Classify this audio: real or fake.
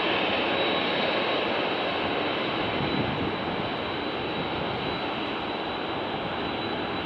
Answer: real